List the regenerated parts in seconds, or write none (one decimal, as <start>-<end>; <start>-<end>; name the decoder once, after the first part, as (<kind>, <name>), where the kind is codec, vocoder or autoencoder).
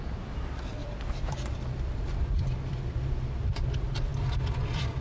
0.8-3.4 (vocoder, BigVGAN v2)